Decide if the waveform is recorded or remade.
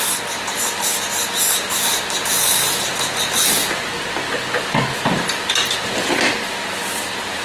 recorded